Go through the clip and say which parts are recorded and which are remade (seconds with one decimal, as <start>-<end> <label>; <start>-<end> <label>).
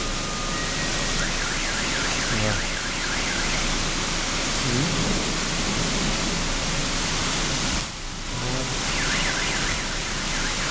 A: 0.0-10.7 recorded